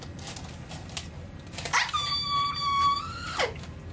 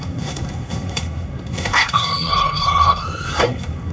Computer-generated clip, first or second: second